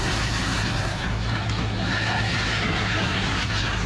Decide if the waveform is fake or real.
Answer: fake